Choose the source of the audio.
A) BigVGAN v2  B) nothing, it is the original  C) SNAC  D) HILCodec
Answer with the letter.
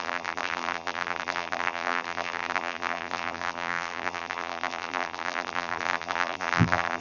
A